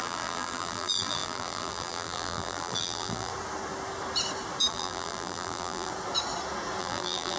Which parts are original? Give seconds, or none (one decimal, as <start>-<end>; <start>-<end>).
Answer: 3.3-4.7; 5.9-6.8